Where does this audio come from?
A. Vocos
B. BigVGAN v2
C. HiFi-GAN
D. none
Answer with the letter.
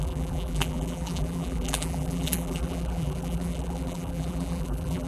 B